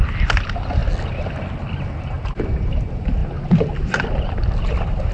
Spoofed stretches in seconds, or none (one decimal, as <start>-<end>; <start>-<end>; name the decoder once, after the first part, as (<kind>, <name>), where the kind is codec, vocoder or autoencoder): none